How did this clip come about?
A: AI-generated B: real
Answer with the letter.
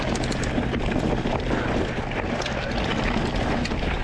B